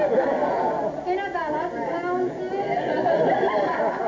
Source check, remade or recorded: recorded